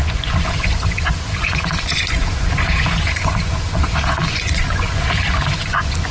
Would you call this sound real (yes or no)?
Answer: no